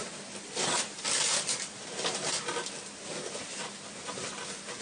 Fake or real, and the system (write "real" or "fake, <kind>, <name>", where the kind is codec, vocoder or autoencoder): real